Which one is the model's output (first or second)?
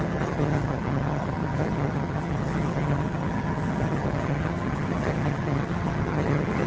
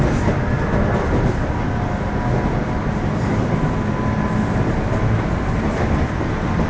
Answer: first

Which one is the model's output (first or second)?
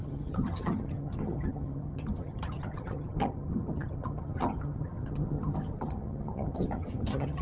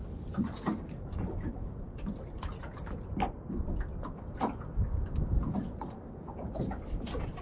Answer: first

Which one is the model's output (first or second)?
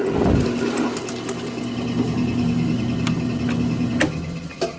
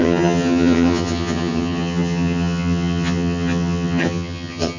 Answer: second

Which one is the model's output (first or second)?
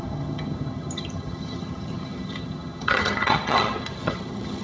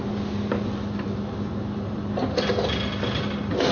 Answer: first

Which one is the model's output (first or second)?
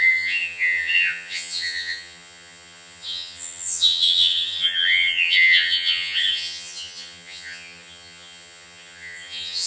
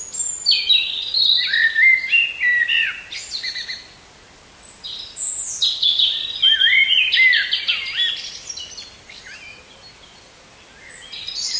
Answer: first